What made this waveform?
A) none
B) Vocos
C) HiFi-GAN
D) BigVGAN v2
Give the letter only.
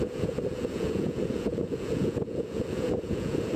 B